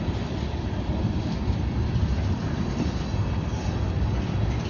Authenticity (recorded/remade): recorded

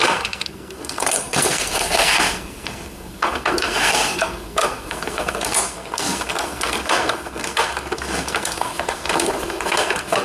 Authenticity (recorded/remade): remade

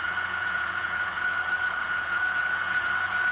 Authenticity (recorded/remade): remade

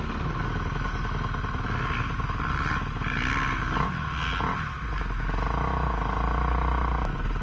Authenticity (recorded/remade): recorded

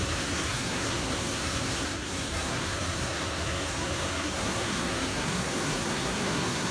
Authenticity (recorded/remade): remade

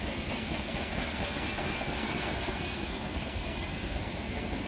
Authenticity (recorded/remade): remade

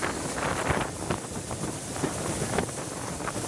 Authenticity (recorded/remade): recorded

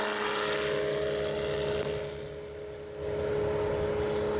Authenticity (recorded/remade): recorded